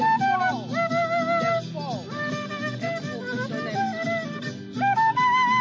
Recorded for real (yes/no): yes